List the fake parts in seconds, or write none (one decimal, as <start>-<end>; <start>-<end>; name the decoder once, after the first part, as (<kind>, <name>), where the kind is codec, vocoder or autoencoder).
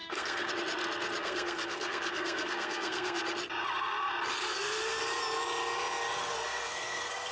0.0-0.5 (codec, SNAC); 1.2-3.2; 4.4-5.0; 6.2-7.3